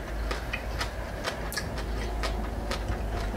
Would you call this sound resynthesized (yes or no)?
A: no